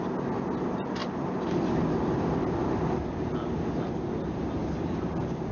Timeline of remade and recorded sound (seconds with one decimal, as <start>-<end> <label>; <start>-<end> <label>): 0.0-5.5 recorded